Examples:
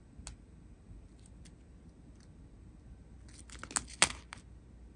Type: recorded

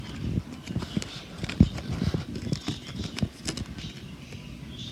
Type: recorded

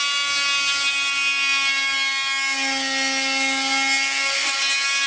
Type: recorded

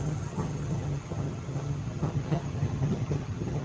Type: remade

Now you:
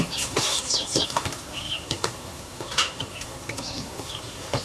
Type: remade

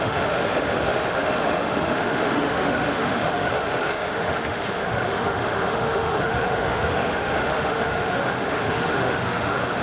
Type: remade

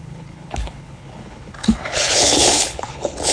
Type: remade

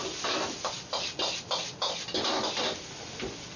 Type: recorded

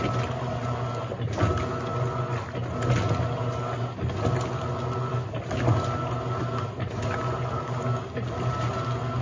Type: recorded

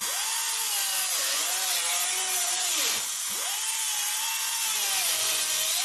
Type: remade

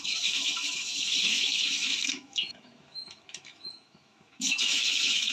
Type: remade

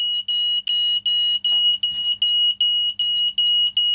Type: recorded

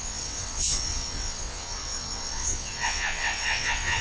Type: remade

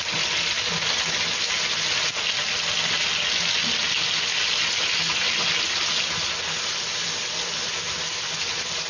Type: recorded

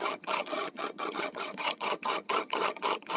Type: remade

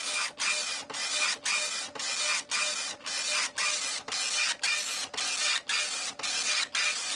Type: recorded